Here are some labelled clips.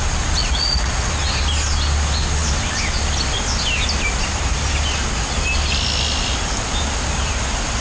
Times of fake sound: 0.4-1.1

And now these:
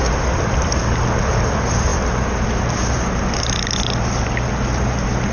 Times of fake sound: none